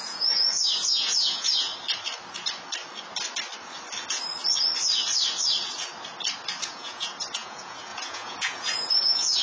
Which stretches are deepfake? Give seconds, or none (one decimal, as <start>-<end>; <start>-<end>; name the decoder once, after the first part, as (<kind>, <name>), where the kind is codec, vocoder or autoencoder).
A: 0.0-1.7 (vocoder, Vocos); 6.7-9.4